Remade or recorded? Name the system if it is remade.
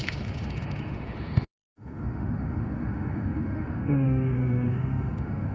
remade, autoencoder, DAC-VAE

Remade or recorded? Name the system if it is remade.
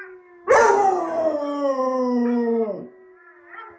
recorded